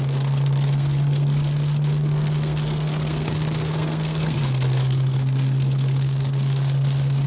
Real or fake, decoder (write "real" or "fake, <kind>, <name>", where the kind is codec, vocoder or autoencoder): fake, codec, SNAC